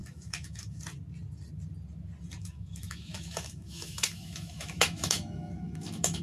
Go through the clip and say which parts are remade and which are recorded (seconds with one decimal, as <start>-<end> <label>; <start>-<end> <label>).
0.0-0.8 remade; 0.8-2.4 recorded; 2.4-6.2 remade